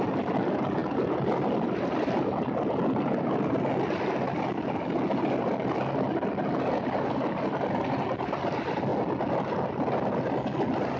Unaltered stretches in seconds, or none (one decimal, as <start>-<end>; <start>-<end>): 0.0-11.0